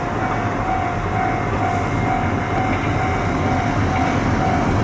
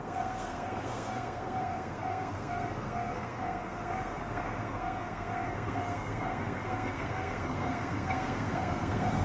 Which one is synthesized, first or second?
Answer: second